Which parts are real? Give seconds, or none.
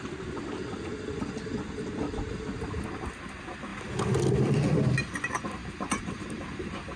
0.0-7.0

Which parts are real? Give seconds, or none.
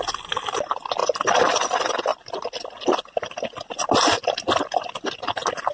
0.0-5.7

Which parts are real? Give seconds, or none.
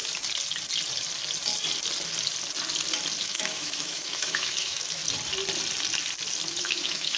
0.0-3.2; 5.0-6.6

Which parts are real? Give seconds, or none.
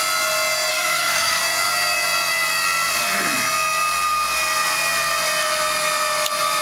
0.0-0.7; 1.4-6.6